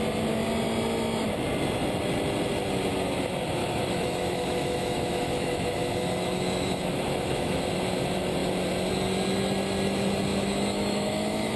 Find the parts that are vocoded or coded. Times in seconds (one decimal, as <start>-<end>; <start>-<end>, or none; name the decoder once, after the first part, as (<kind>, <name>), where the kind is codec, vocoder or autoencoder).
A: 3.6-7.6 (autoencoder, DAC-VAE); 10.3-11.6